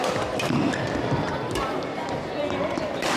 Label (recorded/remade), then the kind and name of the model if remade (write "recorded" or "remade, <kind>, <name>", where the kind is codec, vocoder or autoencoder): recorded